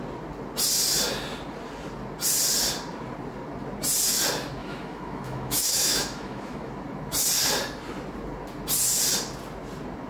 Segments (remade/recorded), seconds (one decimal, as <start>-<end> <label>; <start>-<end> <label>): 0.0-4.6 recorded; 4.6-6.7 remade; 6.7-10.1 recorded